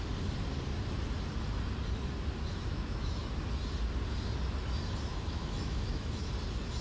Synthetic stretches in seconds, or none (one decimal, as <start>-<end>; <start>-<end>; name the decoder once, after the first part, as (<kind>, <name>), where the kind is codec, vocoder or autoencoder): 2.5-3.3 (autoencoder, DAC-VAE); 5.1-6.3